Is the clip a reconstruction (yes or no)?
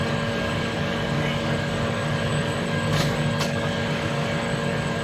yes